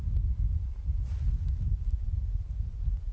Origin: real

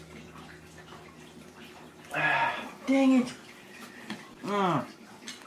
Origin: real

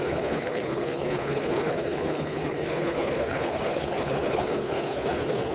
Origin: fake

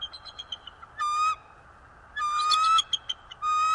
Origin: real